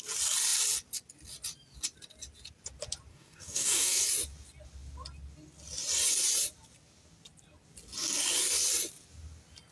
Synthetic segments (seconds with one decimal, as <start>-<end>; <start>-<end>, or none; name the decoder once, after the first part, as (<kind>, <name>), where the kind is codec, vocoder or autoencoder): 3.1-4.0 (codec, DAC)